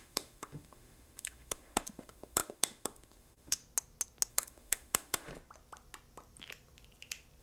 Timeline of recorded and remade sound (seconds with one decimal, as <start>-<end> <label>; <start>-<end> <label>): 0.0-3.6 remade; 3.6-4.3 recorded; 4.3-5.3 remade; 5.3-7.4 recorded